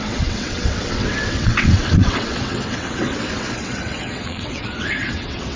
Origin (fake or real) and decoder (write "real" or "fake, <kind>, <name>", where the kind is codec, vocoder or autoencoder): fake, vocoder, WaveNeXt